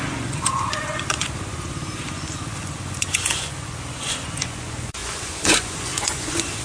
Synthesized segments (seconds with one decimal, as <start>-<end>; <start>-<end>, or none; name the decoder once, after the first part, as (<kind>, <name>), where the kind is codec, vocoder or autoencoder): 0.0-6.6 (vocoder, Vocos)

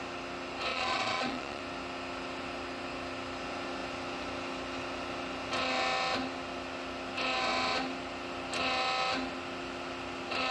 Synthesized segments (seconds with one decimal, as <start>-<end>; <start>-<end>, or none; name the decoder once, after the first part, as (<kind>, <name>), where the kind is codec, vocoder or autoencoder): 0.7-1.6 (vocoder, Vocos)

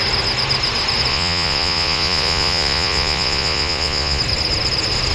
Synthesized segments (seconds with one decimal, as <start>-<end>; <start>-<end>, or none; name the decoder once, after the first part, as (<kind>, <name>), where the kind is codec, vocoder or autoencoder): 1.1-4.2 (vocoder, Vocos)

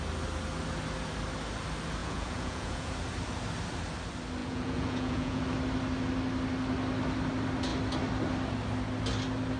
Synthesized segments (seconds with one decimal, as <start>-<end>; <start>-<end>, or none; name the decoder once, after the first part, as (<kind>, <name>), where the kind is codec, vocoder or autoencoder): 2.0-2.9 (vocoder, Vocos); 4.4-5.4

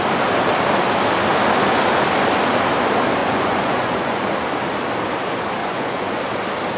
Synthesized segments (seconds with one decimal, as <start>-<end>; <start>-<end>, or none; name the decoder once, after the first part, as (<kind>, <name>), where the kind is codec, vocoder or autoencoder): 3.2-4.3 (vocoder, Vocos); 5.6-6.2

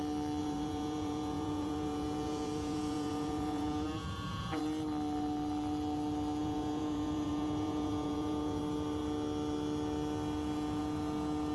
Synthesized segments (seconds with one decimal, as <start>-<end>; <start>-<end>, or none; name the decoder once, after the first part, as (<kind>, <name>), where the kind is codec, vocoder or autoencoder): 0.4-4.6 (vocoder, Vocos); 6.4-8.6

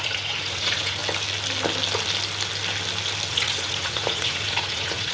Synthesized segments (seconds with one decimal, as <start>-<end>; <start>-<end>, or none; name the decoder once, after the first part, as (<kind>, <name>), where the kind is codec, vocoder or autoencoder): 0.0-1.0 (vocoder, Vocos); 3.3-5.1